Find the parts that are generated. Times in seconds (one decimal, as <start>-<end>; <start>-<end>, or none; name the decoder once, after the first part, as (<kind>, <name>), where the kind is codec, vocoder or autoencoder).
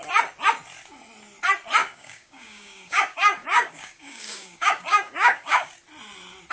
1.8-5.7 (codec, DAC)